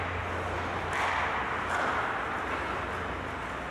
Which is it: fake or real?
real